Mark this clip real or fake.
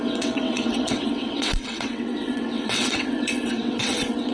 fake